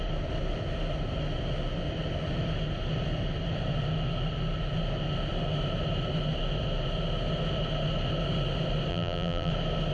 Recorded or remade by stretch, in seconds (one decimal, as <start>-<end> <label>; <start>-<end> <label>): 0.0-8.9 recorded; 8.9-9.5 remade; 9.5-9.9 recorded